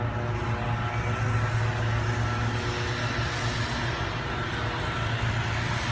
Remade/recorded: recorded